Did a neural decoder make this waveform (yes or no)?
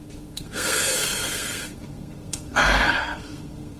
yes